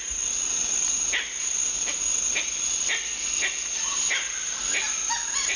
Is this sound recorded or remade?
recorded